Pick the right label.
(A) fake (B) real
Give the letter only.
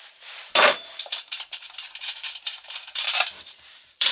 A